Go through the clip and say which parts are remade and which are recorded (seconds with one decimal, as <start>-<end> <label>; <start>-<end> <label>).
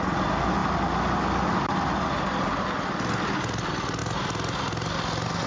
0.0-5.5 recorded